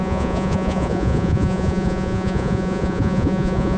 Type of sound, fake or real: fake